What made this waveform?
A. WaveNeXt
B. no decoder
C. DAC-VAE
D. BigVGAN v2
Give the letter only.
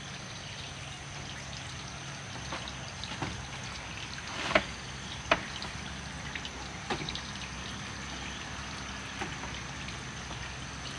B